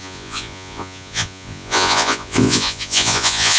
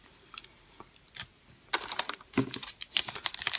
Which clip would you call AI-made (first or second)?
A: first